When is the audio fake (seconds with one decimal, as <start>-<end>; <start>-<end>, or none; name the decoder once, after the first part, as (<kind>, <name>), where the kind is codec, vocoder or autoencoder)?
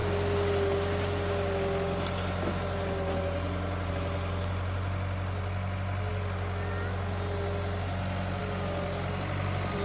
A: none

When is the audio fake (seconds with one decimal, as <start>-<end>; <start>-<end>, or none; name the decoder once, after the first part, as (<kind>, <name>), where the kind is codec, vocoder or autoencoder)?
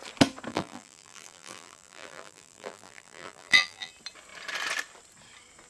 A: 0.5-3.9 (vocoder, BigVGAN v2)